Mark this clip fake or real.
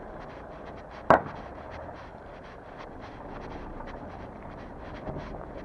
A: real